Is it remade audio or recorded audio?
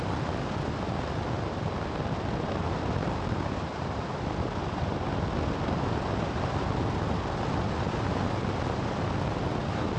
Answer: recorded